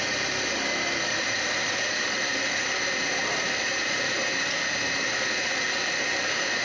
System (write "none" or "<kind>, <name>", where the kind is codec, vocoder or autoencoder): vocoder, BigVGAN v2